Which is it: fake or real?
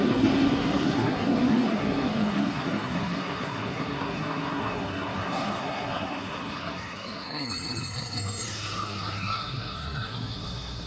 fake